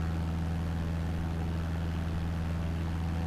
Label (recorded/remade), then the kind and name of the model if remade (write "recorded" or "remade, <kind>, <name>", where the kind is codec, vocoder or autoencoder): recorded